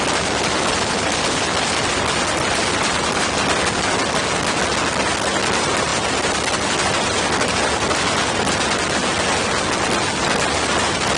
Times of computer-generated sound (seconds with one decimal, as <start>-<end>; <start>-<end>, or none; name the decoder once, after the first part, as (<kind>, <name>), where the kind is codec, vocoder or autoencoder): none